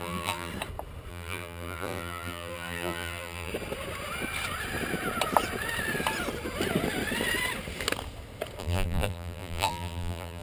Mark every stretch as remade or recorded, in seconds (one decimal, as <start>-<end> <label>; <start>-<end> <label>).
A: 0.0-0.5 remade; 0.5-1.1 recorded; 1.1-3.5 remade; 3.5-8.6 recorded; 8.6-10.4 remade